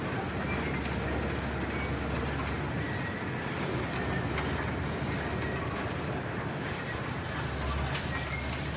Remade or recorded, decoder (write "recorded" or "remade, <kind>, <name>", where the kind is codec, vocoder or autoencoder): recorded